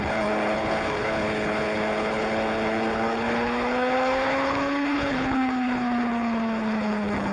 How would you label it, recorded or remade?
remade